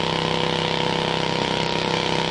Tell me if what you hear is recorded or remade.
recorded